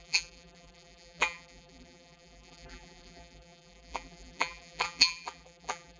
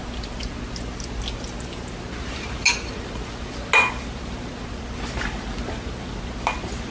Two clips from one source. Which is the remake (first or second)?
first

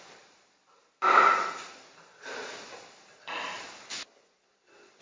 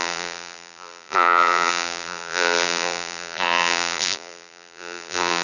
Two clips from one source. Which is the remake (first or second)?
second